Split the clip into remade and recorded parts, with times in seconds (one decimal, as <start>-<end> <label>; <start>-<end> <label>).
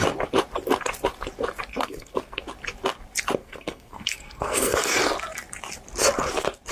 0.0-1.7 recorded; 1.7-2.4 remade; 2.4-3.4 recorded; 3.4-4.8 remade; 4.8-6.7 recorded